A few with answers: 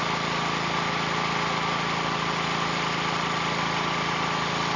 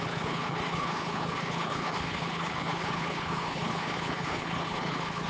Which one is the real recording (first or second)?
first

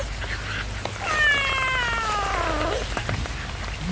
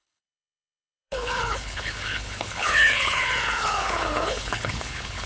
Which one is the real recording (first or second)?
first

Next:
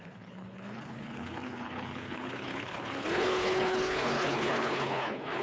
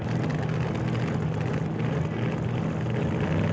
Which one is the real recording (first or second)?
second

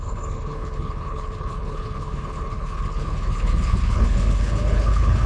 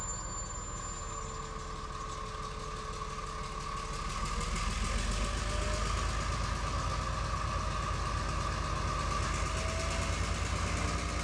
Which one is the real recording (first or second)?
second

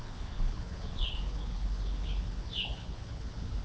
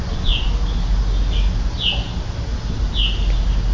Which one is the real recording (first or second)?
second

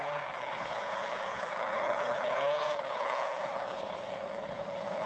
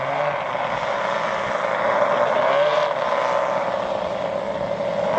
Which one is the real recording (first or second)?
second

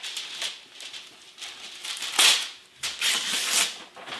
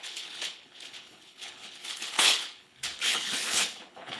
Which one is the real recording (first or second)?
first